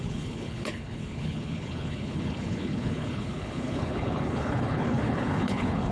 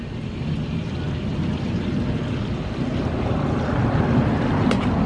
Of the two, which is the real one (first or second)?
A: second